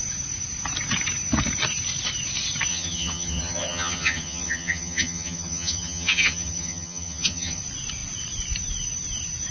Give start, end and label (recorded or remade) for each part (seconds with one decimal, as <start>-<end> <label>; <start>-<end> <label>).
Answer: 0.0-2.7 recorded; 2.7-7.6 remade; 7.6-9.5 recorded